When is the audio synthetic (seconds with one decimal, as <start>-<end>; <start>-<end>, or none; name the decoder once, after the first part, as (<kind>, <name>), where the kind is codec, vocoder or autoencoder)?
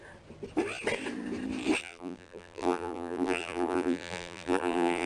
1.8-5.1 (vocoder, BigVGAN v2)